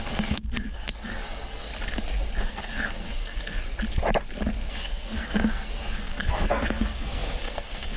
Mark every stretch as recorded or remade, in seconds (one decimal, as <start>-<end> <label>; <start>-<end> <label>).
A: 0.0-1.7 remade; 1.7-2.4 recorded; 2.4-3.6 remade; 3.6-4.7 recorded; 4.7-8.0 remade